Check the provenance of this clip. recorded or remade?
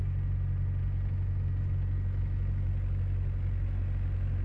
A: recorded